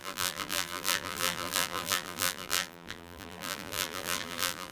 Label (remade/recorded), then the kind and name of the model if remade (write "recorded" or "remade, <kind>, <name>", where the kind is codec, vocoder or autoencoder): remade, vocoder, BigVGAN v2